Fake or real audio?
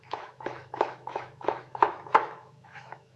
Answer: fake